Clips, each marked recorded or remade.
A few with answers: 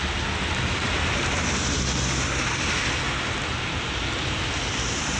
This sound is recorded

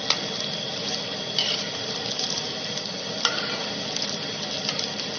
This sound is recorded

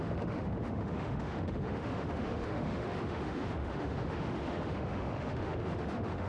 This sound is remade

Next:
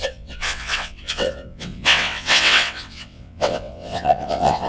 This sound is remade